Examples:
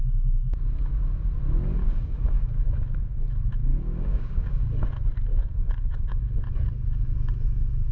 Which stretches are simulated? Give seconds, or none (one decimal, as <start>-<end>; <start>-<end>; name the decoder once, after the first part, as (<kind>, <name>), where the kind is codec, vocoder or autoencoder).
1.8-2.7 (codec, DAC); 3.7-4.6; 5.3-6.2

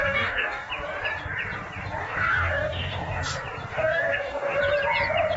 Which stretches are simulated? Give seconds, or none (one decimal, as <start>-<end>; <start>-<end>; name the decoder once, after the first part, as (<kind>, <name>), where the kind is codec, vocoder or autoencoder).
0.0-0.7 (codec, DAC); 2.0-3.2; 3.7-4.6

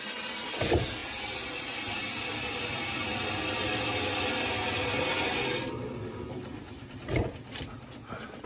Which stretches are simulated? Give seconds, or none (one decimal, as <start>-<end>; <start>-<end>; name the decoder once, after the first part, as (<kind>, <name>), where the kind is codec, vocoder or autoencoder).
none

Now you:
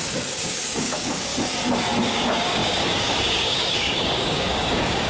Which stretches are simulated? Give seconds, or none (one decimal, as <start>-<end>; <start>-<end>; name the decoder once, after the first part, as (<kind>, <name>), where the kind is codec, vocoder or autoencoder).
0.0-1.3 (codec, DAC); 2.0-5.1

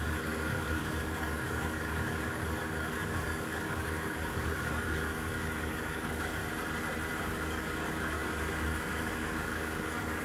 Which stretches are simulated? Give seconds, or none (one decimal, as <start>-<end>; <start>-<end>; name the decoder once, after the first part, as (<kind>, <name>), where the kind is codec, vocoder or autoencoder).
0.0-6.4 (codec, DAC); 7.2-10.2

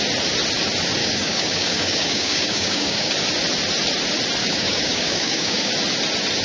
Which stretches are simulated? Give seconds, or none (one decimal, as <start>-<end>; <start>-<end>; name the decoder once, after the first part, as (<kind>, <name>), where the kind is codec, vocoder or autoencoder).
1.0-3.1 (codec, DAC); 4.4-5.7

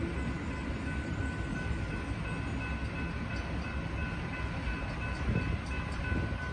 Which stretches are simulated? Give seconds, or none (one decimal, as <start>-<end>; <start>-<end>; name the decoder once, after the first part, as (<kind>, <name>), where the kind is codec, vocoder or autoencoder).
none